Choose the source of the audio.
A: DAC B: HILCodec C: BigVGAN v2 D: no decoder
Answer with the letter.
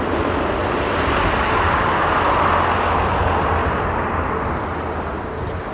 D